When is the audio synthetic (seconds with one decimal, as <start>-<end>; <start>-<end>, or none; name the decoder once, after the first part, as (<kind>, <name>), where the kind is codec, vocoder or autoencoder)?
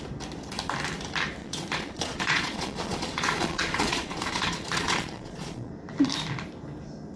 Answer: 1.4-5.7 (vocoder, Vocos)